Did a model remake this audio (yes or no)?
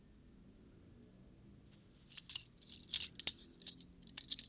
no